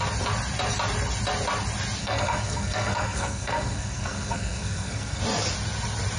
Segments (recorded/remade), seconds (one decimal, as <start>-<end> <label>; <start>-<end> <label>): 0.0-2.0 recorded; 2.0-5.2 remade; 5.2-6.2 recorded